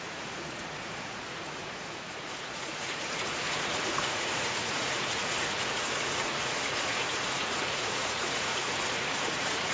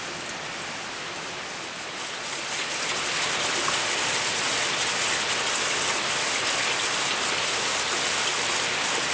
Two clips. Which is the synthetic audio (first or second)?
first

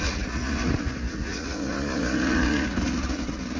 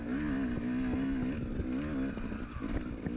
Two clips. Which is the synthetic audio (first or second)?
first